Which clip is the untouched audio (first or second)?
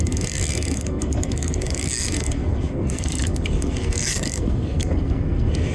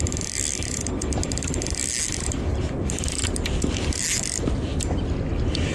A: second